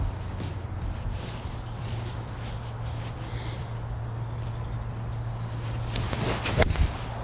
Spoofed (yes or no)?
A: yes